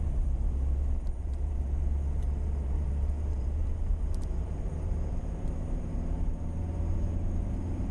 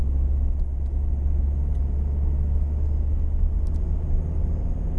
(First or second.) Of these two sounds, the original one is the second